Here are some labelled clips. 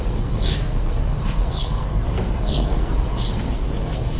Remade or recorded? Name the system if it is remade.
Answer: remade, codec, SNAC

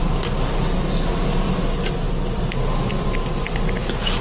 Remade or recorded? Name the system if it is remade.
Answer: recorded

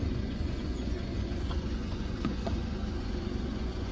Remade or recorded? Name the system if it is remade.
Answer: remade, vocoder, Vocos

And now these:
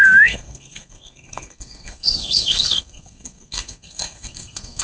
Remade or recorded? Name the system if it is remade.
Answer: remade, codec, SNAC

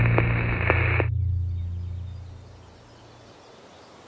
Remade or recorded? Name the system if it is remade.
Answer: recorded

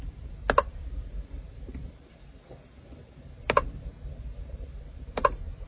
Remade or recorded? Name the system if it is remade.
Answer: recorded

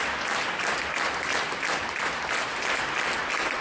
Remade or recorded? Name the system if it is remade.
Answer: recorded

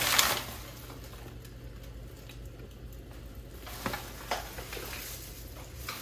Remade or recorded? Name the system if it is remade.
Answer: recorded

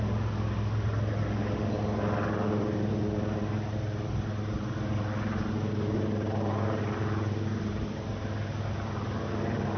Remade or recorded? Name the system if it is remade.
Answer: recorded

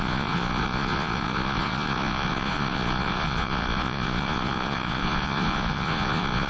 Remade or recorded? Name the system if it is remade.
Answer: remade, vocoder, Vocos